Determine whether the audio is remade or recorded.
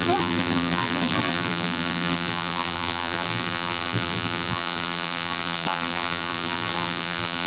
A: remade